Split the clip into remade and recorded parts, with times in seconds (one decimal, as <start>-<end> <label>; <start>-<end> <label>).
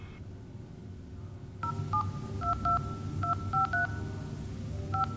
0.0-5.2 recorded